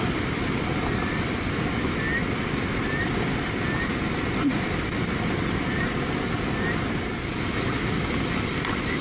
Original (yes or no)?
yes